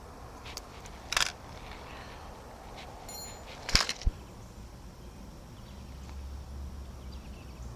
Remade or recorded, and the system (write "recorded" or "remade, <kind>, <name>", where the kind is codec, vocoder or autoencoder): recorded